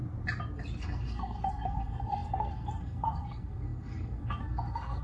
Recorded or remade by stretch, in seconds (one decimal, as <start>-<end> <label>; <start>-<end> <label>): 0.0-0.8 recorded; 0.8-5.0 remade